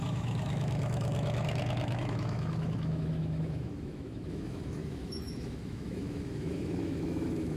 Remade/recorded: remade